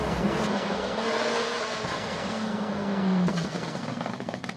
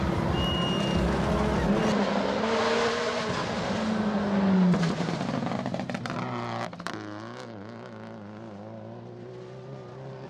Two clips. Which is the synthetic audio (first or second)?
first